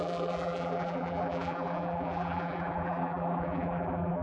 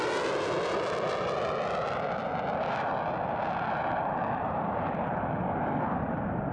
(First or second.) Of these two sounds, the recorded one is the second